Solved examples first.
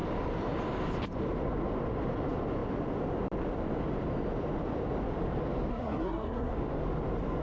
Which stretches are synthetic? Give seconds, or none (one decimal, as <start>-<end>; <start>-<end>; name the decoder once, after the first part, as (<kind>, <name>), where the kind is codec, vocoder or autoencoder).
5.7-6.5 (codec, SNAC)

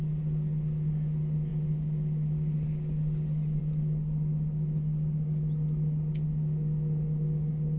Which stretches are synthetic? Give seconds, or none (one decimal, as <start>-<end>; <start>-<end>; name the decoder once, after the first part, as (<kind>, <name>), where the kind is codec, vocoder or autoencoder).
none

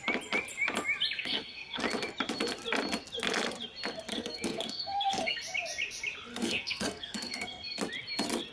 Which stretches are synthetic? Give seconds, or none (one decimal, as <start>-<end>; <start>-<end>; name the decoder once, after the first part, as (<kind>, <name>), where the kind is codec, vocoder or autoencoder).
1.2-1.8 (codec, SNAC); 4.1-5.4; 6.3-7.8

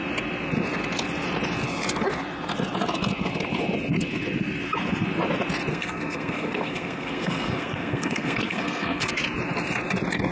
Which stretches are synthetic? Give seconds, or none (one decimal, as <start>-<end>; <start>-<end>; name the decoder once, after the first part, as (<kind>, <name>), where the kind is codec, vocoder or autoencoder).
5.7-9.1 (codec, SNAC)

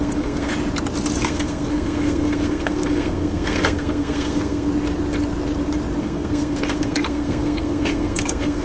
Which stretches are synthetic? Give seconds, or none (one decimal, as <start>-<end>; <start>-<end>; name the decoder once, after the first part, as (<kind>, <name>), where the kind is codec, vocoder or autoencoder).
0.0-0.5 (codec, SNAC); 1.2-4.7; 6.0-8.6

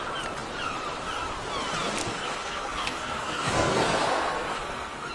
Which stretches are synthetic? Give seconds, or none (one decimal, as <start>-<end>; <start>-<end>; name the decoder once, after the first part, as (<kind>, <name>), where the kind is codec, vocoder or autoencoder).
2.0-5.1 (codec, SNAC)